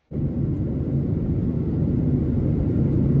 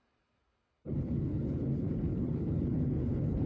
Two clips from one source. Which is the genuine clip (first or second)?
first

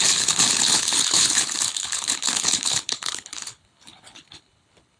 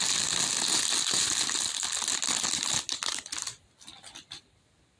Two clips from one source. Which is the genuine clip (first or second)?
second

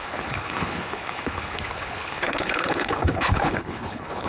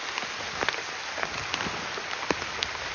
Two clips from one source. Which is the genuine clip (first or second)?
second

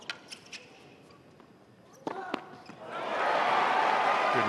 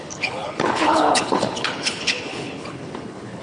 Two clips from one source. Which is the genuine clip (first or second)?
first